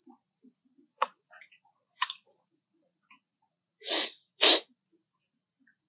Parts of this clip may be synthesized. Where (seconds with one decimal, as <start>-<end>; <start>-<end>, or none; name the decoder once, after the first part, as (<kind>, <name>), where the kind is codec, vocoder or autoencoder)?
0.9-4.3 (vocoder, Vocos)